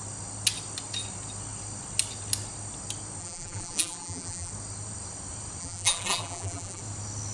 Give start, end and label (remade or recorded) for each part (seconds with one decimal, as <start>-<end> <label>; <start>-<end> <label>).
0.0-3.2 recorded; 3.2-4.5 remade; 4.5-5.6 recorded; 5.6-6.8 remade; 6.8-7.3 recorded